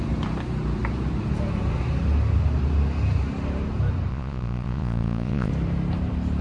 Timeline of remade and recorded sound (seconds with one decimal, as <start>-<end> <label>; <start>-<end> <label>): 0.0-4.1 recorded; 4.1-5.5 remade; 5.5-6.4 recorded